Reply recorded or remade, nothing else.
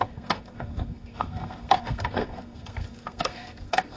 remade